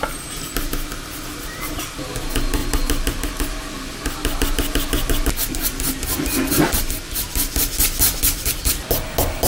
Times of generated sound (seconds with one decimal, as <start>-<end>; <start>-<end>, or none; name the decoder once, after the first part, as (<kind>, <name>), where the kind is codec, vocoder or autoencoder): none